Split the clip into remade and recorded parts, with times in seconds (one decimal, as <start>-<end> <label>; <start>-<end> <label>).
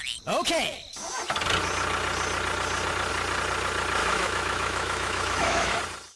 0.0-4.0 recorded; 4.0-5.8 remade; 5.8-6.2 recorded